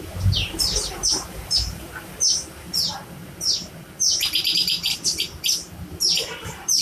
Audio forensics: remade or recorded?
remade